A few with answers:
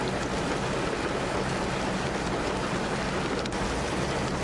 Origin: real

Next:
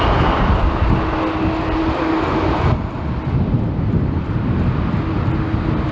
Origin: real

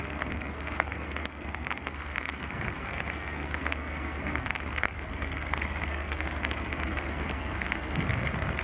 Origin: fake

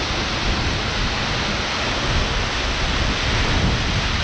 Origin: real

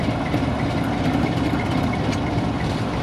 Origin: real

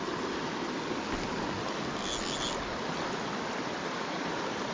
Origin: real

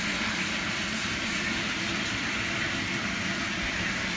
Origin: fake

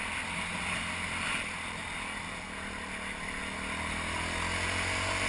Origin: real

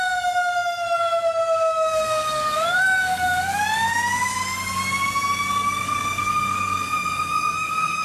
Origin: fake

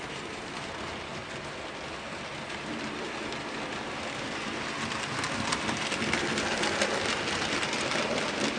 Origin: real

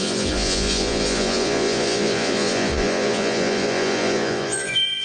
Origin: fake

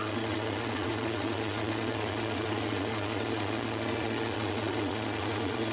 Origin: fake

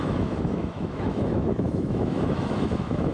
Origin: fake